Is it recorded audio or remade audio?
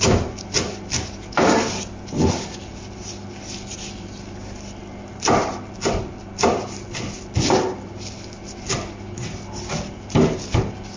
recorded